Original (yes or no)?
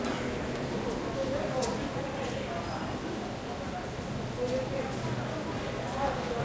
yes